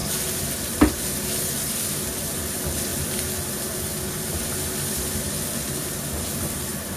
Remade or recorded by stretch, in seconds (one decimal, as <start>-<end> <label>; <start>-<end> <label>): 0.0-2.9 recorded; 2.9-4.4 remade; 4.4-7.0 recorded